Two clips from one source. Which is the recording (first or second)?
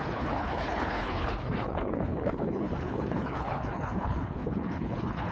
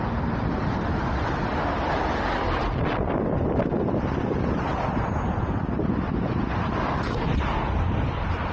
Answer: second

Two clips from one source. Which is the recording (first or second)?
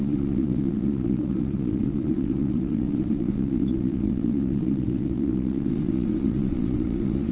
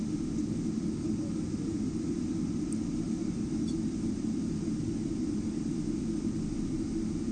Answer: second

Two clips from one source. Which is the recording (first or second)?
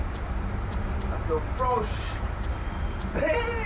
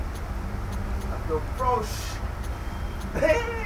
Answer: second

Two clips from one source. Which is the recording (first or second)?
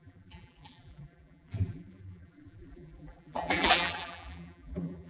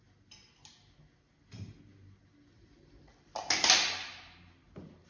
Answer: second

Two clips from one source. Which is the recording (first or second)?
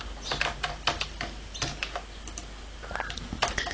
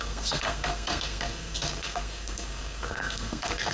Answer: first